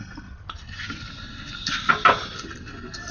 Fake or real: real